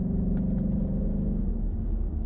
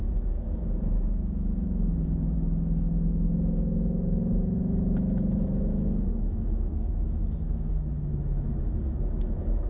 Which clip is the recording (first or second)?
first